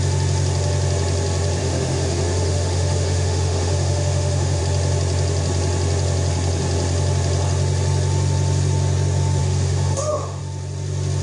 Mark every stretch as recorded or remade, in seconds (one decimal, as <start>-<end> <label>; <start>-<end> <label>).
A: 0.0-1.6 recorded; 1.6-4.6 remade; 4.6-9.4 recorded; 9.4-10.4 remade; 10.4-11.2 recorded